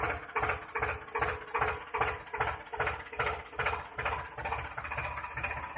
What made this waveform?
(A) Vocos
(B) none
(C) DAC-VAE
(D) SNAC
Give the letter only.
B